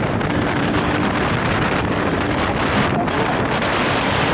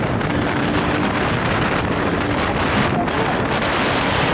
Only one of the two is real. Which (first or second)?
second